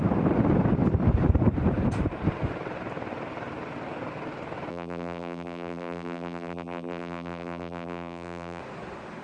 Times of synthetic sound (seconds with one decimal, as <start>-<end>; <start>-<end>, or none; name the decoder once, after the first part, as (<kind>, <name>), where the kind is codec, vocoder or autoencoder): 4.7-8.6 (vocoder, BigVGAN v2)